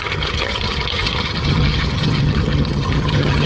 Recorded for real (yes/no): no